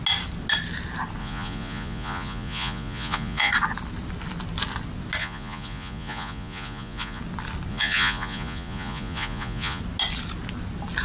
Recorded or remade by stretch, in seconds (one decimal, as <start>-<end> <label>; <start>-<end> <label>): 0.0-1.2 recorded; 1.2-3.5 remade; 3.5-5.2 recorded; 5.2-7.2 remade; 7.2-7.7 recorded; 7.7-9.8 remade; 9.8-11.0 recorded